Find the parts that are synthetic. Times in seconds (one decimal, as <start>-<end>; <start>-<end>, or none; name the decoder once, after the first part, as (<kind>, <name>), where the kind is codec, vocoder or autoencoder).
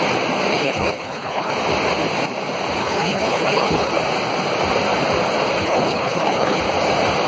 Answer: 0.5-1.5 (codec, HILCodec); 2.8-3.9; 5.6-6.6